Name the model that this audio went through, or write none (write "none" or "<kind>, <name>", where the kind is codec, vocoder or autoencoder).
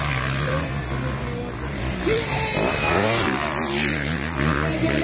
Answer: none